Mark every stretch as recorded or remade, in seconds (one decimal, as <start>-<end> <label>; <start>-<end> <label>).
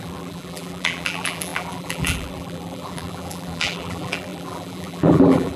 0.0-5.6 remade